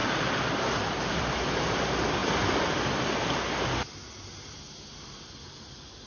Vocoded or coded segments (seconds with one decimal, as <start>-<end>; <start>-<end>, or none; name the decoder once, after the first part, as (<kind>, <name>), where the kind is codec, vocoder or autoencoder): none